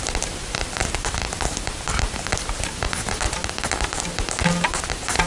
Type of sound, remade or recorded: remade